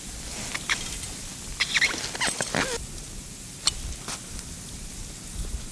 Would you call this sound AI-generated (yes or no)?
no